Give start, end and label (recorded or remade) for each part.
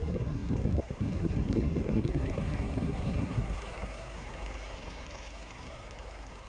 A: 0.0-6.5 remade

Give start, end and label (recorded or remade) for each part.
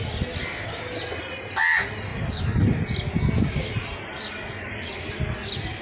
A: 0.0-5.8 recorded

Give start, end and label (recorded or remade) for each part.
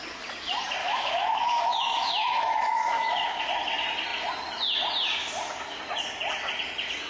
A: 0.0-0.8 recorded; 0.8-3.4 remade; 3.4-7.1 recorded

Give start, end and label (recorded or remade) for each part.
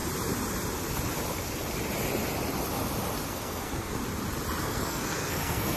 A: 0.0-3.3 recorded; 3.3-4.0 remade; 4.0-4.6 recorded; 4.6-5.8 remade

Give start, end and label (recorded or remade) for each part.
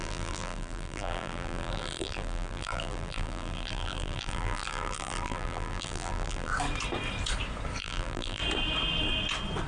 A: 0.0-6.5 remade; 6.5-7.8 recorded; 7.8-8.4 remade; 8.4-9.7 recorded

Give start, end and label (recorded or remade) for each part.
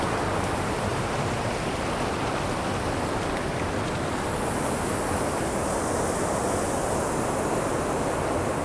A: 0.0-0.9 recorded; 0.9-1.5 remade; 1.5-8.6 recorded